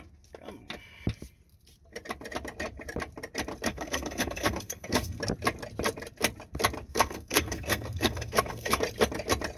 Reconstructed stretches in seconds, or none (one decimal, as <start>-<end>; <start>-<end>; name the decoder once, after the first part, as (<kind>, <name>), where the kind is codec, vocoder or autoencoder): 3.7-5.2 (codec, SNAC); 6.9-8.8